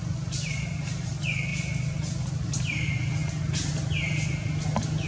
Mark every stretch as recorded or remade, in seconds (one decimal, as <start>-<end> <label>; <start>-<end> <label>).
0.0-5.1 recorded